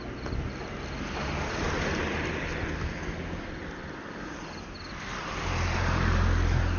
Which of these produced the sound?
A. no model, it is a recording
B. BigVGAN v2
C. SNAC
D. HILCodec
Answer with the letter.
A